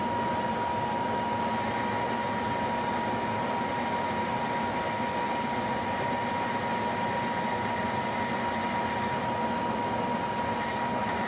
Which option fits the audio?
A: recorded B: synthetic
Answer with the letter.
A